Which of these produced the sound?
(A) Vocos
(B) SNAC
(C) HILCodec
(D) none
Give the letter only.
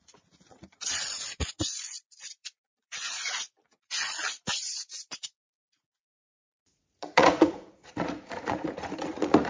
A